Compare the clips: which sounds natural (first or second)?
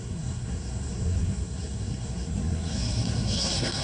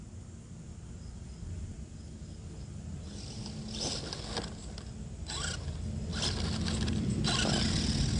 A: second